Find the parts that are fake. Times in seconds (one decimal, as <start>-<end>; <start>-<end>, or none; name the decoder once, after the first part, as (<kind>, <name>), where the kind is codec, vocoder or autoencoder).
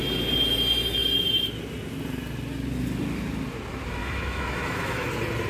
4.0-5.1 (autoencoder, DAC-VAE)